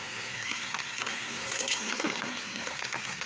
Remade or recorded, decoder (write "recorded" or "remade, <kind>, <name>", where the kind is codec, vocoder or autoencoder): remade, codec, SNAC